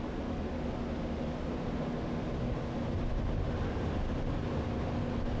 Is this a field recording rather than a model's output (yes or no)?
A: yes